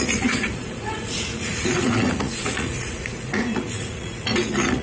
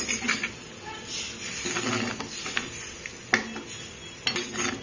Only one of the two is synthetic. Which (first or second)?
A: first